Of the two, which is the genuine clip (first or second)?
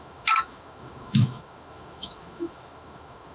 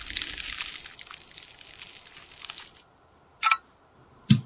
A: second